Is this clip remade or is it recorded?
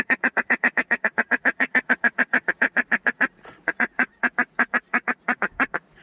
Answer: remade